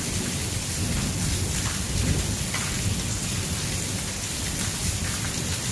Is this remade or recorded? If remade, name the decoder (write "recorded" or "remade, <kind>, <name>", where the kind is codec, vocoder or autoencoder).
remade, vocoder, BigVGAN v2